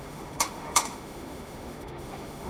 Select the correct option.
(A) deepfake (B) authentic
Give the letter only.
A